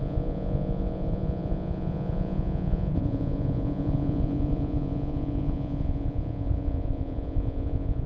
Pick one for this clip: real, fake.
fake